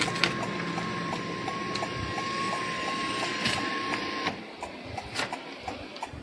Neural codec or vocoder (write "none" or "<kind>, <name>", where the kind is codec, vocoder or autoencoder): none